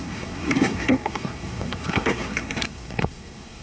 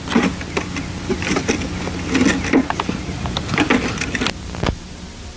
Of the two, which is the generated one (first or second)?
first